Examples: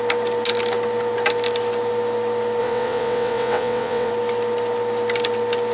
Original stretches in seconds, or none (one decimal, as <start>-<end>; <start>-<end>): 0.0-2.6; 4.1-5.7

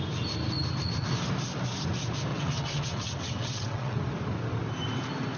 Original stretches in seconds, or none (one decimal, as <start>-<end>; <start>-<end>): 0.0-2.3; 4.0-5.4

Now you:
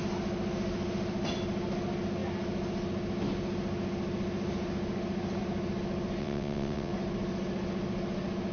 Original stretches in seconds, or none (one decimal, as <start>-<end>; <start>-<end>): 0.0-6.2; 6.9-8.5

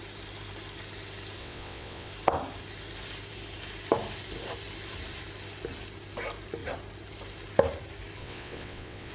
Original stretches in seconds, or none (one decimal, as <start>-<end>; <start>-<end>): 0.0-1.4; 2.1-8.2

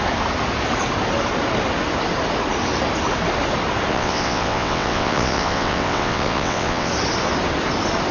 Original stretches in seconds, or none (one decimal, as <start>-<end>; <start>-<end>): 0.0-3.9; 6.9-8.1

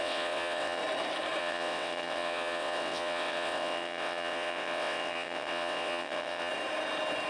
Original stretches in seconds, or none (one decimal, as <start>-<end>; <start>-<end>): 0.8-1.4; 6.5-7.3